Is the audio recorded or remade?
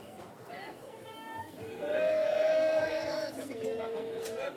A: remade